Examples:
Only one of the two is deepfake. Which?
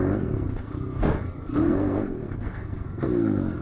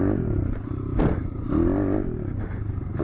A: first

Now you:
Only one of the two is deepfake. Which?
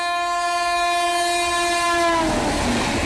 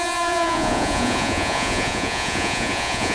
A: second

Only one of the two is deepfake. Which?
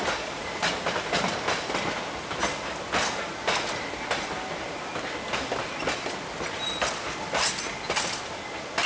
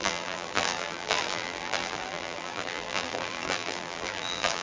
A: second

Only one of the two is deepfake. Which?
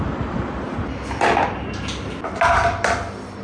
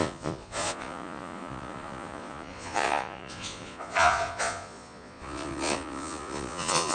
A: second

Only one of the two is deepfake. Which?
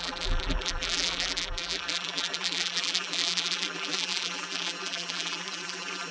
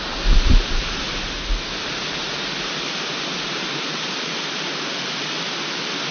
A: first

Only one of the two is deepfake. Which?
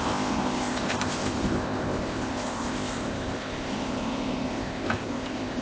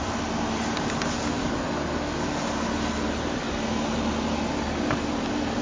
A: first